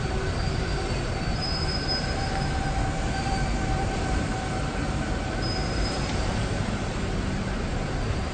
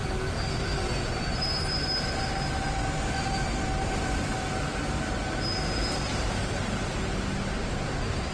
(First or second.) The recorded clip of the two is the second